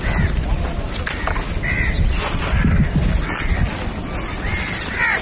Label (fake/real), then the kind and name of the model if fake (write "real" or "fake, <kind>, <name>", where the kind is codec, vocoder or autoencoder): real